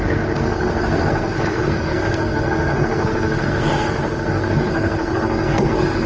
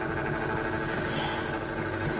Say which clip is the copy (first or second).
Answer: first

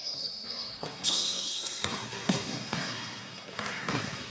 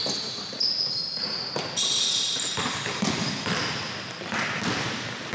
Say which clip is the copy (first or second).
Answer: first